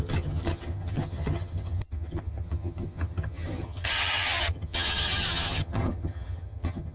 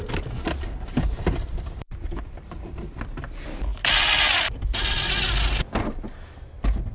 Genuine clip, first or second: second